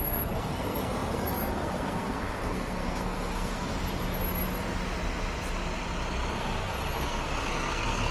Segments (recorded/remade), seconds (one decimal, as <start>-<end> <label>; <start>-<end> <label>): 0.0-3.7 remade; 3.7-6.3 recorded; 6.3-8.1 remade